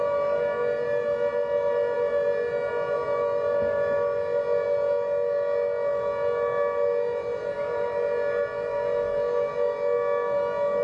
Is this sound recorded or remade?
recorded